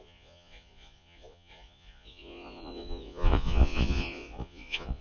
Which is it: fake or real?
fake